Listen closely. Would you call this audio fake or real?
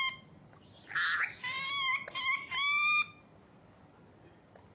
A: real